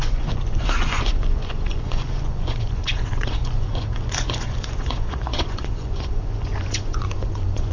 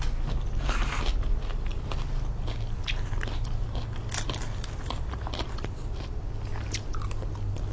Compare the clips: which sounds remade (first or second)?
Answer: first